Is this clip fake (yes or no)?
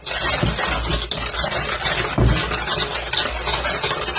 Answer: no